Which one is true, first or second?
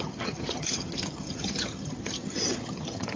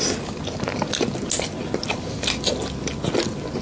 second